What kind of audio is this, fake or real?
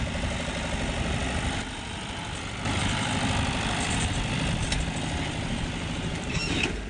fake